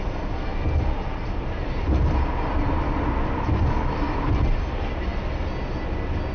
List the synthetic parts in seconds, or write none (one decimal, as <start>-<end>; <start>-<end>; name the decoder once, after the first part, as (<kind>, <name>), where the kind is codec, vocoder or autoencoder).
none